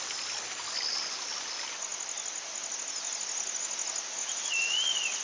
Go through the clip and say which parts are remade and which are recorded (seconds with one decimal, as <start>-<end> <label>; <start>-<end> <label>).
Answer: 0.0-4.2 recorded; 4.2-5.2 remade